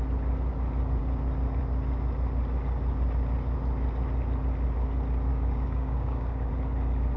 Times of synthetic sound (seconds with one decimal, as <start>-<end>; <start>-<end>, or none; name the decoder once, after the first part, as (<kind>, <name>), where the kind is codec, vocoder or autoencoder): 5.3-6.5 (codec, DAC)